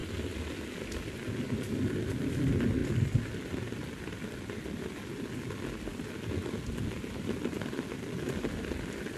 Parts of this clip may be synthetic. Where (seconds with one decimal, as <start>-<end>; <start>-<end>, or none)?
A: none